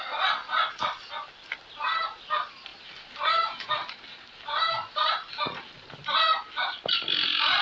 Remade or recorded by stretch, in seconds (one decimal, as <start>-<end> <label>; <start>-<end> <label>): 0.0-7.6 recorded